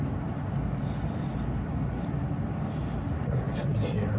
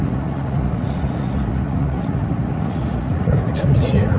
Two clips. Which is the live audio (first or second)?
first